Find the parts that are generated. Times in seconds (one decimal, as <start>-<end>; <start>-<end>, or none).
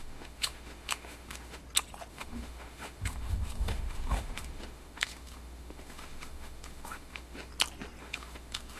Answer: 0.0-1.6; 2.1-7.5; 8.0-8.8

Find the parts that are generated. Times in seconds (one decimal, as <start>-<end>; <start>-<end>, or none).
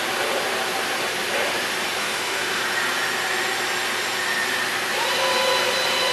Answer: 2.0-2.6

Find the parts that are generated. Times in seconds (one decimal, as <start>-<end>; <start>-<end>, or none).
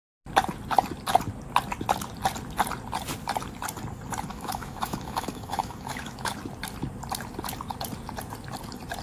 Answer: 4.3-6.3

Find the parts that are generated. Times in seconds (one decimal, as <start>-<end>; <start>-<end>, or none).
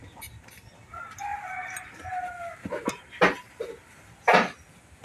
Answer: none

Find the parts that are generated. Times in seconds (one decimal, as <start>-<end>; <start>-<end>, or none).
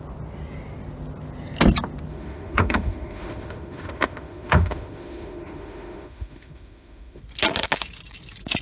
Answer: 2.1-7.2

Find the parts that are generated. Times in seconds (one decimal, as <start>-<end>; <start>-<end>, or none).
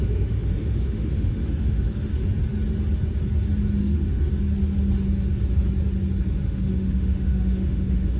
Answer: 0.0-2.1; 3.8-4.3; 6.3-8.2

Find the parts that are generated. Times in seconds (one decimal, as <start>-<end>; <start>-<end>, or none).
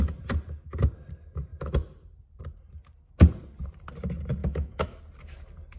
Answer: 4.4-5.0